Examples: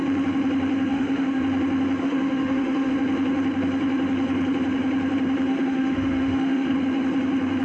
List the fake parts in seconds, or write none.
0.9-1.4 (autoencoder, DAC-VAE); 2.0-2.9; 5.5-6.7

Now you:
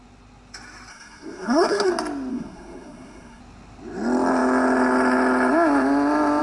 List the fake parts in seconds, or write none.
0.9-1.9 (codec, SNAC); 2.3-3.4